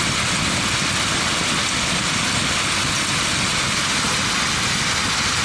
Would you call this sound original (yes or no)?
yes